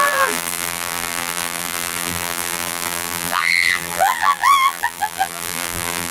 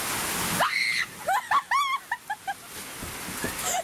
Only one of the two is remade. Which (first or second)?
first